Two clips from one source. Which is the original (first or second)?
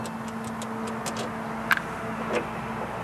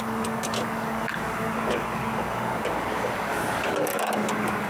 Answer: first